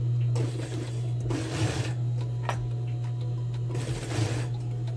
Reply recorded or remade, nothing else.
recorded